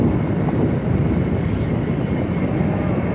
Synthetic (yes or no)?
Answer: no